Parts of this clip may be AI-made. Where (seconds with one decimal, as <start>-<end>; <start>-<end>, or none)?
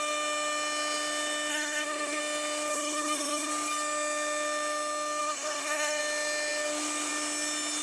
1.5-2.2; 2.7-3.5; 5.2-6.0